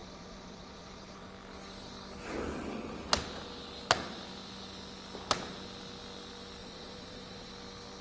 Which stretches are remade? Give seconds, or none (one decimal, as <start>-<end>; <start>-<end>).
0.0-1.3; 6.6-7.5